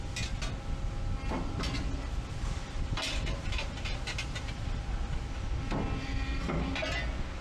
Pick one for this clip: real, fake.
real